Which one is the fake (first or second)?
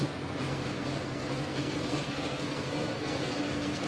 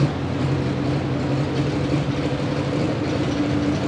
first